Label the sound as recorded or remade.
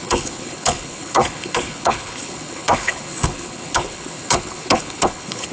remade